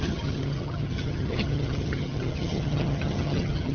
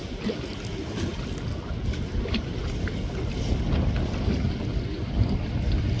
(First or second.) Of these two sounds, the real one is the second